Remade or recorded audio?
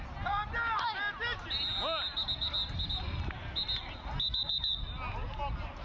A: recorded